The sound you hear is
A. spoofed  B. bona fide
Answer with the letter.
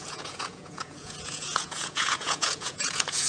A